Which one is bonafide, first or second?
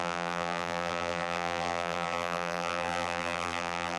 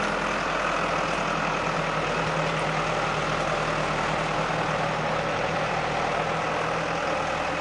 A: second